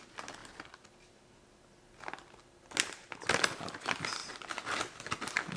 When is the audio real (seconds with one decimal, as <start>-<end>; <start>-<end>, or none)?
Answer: 0.0-5.6